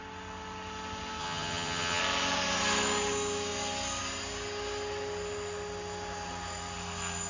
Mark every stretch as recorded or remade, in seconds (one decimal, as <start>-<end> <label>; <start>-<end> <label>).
0.0-1.2 recorded; 1.2-2.0 remade; 2.0-7.3 recorded